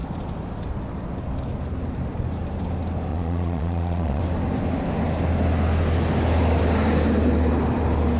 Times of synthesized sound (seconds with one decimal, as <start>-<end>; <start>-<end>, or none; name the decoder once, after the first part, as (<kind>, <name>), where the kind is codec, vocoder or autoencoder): 3.1-4.2 (vocoder, Vocos)